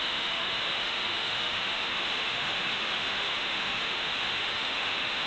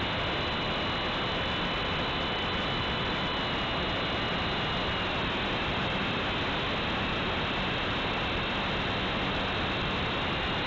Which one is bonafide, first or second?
second